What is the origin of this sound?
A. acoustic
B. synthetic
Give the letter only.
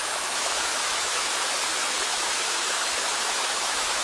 B